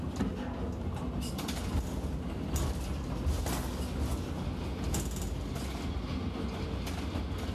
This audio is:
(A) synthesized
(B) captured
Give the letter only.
B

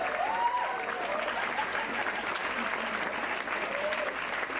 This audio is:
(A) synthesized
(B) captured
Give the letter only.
B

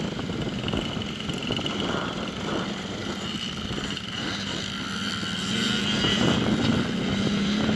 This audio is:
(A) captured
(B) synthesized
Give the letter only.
B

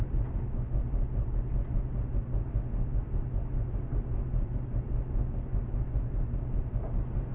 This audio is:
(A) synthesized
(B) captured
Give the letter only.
B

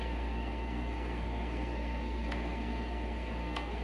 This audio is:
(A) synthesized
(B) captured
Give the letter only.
A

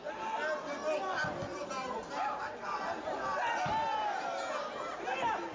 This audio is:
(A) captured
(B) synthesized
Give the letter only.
A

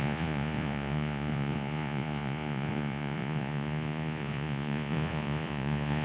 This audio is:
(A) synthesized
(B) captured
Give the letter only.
A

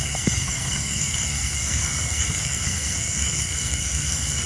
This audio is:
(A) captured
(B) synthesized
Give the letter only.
B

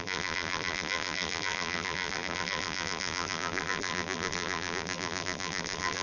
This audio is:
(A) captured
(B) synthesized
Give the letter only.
B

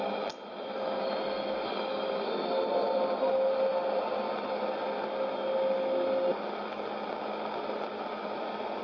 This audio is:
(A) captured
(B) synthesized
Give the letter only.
A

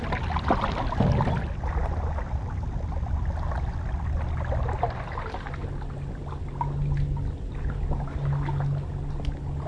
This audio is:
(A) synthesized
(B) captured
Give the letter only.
B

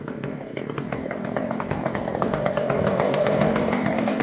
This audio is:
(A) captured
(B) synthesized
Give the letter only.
B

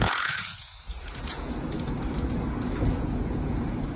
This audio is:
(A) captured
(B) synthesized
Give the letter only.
B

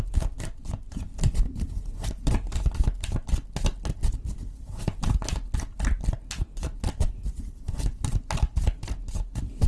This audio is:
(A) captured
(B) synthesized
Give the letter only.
A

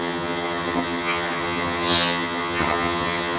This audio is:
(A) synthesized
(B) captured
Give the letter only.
A